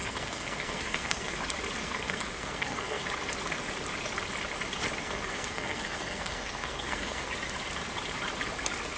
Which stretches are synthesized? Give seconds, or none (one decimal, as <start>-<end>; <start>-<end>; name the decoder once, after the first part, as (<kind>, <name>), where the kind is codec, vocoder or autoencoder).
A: 0.0-1.4 (codec, SNAC); 1.8-3.1; 5.0-7.3